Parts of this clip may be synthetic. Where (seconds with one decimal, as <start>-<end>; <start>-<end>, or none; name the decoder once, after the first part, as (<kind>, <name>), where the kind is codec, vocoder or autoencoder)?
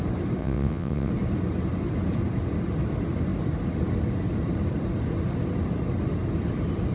0.4-1.1 (vocoder, WaveNeXt)